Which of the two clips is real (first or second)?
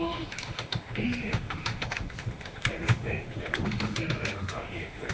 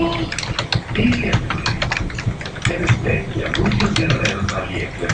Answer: second